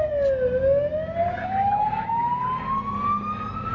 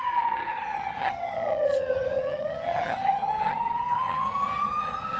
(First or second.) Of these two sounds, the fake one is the second